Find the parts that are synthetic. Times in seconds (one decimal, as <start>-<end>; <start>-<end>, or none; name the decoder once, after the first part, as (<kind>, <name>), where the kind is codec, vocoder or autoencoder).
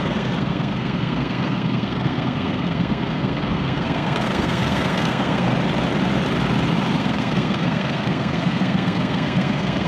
0.0-5.5 (codec, SNAC); 7.0-9.9